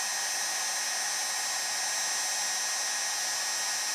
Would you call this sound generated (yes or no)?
no